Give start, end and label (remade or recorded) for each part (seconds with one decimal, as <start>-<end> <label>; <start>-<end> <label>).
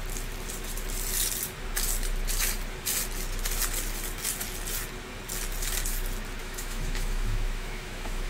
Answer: 0.0-6.4 recorded; 6.4-8.3 remade